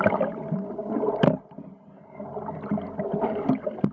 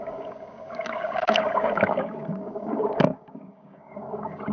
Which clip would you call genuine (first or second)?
first